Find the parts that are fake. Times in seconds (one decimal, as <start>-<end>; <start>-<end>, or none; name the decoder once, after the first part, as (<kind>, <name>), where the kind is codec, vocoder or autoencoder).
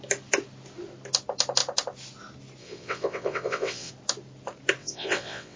2.6-3.9 (vocoder, WaveNeXt); 4.8-5.6